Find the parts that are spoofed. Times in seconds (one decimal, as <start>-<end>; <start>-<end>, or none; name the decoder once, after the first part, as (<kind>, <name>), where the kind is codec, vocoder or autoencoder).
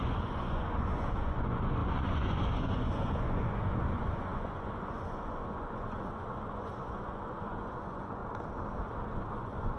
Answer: 0.0-8.2 (vocoder, Vocos); 9.1-9.8